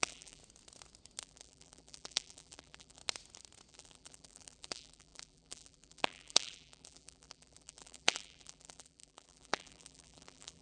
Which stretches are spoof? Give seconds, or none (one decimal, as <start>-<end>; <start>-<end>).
0.0-0.4; 1.2-3.0; 3.7-10.6